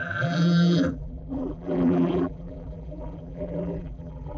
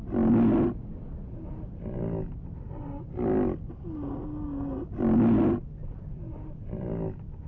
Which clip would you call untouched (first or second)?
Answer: second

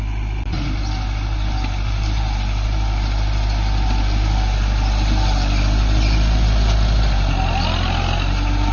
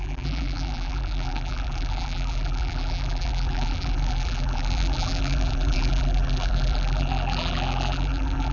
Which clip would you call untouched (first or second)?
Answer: first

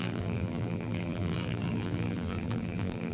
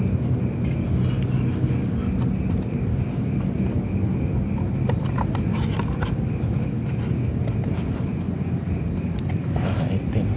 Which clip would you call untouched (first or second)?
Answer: second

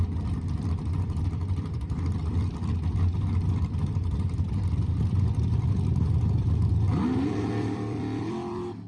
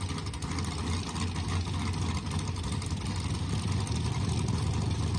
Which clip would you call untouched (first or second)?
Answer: second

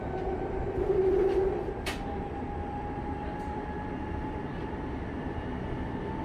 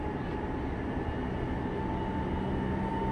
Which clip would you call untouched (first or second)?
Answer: second